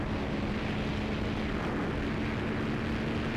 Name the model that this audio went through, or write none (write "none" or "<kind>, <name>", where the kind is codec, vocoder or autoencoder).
none